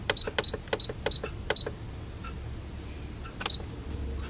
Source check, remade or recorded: recorded